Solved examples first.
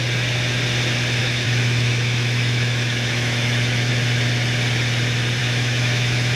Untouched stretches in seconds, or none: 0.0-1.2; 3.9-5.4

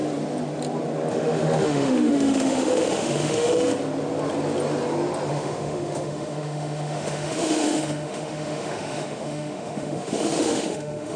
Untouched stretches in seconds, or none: 0.0-1.1; 3.7-5.3

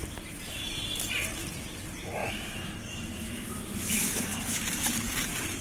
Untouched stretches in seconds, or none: 0.0-2.2; 4.6-5.6

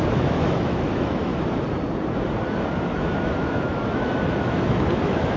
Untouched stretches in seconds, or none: 1.3-3.3

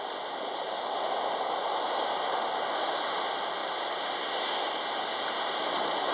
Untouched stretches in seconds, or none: 0.0-6.1